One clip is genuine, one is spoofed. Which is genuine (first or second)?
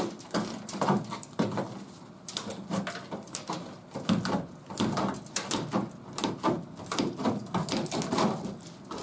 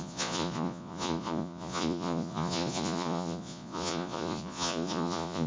first